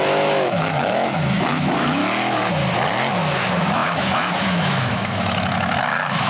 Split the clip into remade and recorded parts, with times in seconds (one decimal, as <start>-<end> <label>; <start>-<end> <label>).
0.0-2.0 remade; 2.0-3.2 recorded; 3.2-6.3 remade